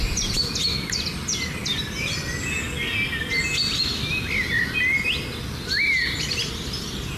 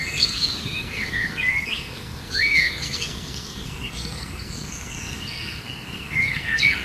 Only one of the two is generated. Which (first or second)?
second